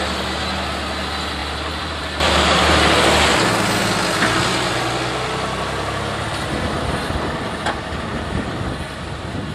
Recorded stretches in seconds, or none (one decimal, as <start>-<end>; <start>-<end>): 0.0-1.4; 3.5-8.1; 8.6-9.5